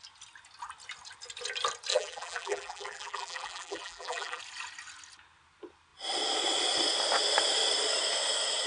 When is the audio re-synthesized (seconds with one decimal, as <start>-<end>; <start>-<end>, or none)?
1.9-4.4